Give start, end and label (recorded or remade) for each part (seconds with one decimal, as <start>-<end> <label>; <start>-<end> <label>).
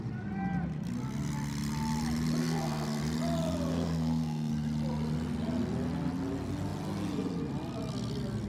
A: 0.0-2.4 recorded; 2.4-3.0 remade; 3.0-3.7 recorded; 3.7-4.5 remade; 4.5-8.5 recorded